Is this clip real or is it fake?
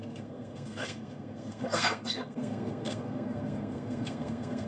fake